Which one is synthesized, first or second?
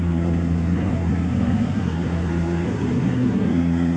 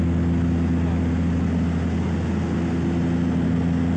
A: first